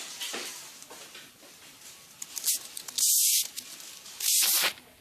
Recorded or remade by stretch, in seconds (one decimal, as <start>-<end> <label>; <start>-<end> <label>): 0.0-5.0 recorded